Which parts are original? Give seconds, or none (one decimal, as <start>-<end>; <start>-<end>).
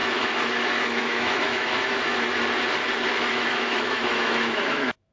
2.1-3.3